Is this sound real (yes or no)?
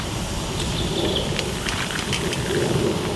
no